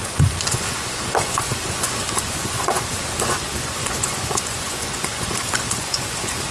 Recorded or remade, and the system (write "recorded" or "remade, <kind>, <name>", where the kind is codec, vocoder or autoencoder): remade, vocoder, Vocos